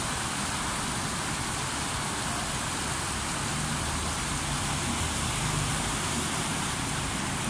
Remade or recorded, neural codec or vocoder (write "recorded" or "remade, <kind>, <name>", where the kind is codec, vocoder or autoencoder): recorded